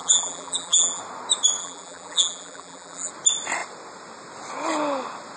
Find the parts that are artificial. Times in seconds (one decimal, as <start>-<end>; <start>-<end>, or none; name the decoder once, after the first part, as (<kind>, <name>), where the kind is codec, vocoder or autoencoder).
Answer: 0.0-1.0 (vocoder, BigVGAN v2); 1.6-3.1